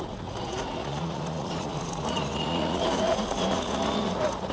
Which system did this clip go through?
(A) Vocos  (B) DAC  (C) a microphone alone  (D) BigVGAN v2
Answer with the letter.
A